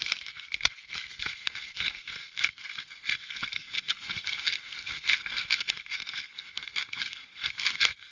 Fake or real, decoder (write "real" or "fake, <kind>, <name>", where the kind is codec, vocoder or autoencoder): fake, codec, SNAC